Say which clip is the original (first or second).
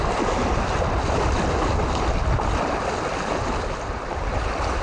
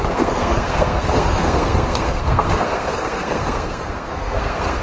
first